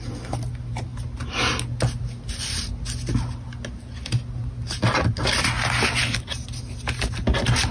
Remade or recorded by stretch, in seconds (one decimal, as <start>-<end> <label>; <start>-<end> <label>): 0.0-7.7 recorded